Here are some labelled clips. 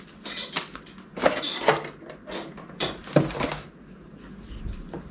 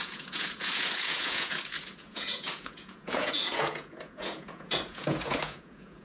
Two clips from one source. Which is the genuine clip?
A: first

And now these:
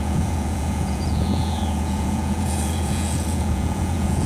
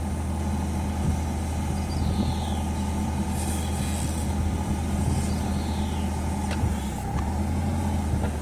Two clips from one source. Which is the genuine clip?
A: second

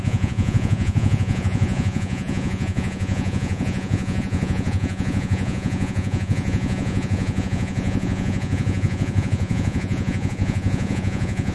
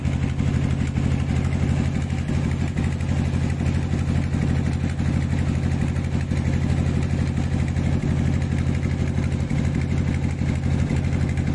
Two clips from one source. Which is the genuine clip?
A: second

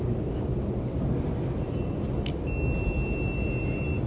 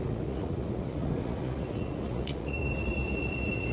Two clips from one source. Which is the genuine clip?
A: first